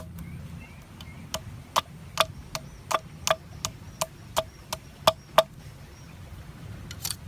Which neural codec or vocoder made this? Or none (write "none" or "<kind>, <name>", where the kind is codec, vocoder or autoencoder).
none